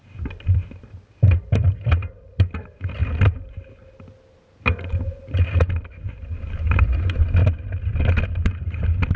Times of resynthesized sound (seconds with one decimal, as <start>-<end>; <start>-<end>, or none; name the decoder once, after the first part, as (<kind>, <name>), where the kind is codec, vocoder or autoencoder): none